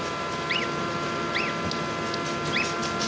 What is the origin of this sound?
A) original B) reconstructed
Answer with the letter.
A